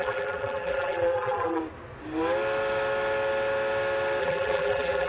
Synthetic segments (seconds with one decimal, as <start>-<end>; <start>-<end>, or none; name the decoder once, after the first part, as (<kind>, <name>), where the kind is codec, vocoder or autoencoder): 0.0-1.6 (vocoder, BigVGAN v2); 4.2-5.1